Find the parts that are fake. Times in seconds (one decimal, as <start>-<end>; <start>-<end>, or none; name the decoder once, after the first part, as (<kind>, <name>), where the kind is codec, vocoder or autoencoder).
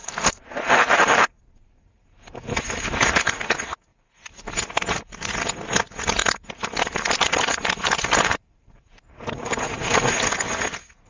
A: 0.0-3.4 (vocoder, BigVGAN v2); 6.2-10.0